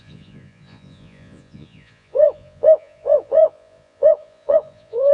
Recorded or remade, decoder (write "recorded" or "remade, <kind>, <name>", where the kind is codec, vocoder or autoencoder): remade, vocoder, Vocos